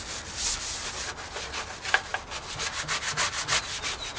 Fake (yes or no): no